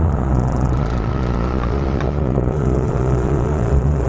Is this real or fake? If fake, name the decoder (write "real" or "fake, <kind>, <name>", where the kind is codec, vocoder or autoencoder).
fake, vocoder, Vocos